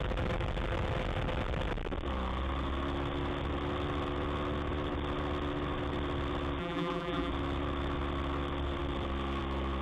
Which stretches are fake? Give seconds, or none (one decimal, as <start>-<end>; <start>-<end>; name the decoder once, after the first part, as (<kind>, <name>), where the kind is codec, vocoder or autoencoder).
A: 6.6-7.3 (vocoder, BigVGAN v2)